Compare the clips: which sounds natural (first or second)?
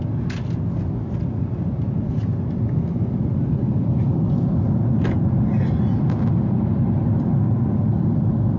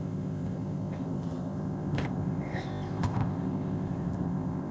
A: first